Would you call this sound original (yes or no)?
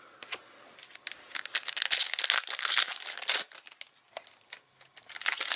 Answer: yes